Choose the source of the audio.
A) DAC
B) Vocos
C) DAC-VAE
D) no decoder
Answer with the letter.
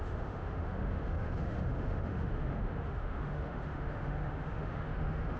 C